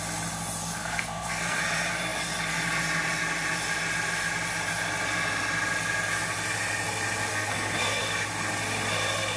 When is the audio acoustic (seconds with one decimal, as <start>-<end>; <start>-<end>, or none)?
0.0-0.8; 1.6-7.3; 8.0-9.4